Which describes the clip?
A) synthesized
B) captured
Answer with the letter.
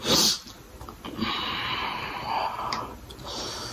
B